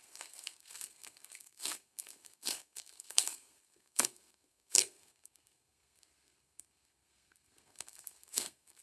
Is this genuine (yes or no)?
no